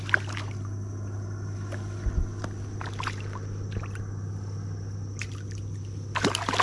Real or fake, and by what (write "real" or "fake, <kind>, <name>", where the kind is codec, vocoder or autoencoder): real